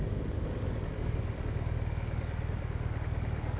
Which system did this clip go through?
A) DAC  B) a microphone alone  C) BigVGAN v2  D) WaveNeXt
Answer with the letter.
A